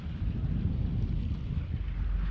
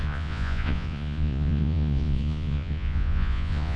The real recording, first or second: first